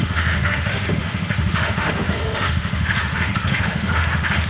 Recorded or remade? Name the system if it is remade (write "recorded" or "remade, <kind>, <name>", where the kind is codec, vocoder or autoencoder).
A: remade, autoencoder, DAC-VAE